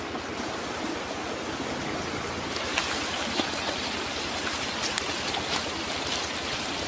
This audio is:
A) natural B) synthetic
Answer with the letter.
A